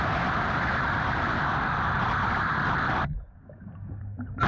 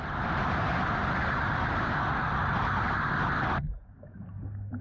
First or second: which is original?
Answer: second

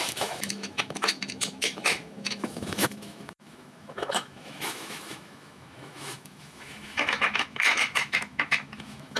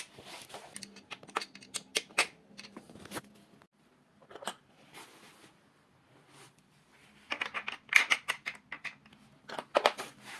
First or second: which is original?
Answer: second